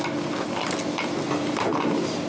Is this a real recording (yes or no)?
yes